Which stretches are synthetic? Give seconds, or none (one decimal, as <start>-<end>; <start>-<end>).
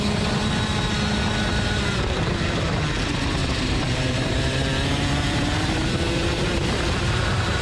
1.5-2.6; 3.4-7.6